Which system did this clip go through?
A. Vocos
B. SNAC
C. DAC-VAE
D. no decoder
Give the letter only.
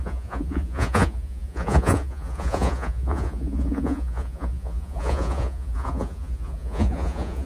A